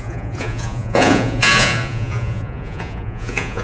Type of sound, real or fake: fake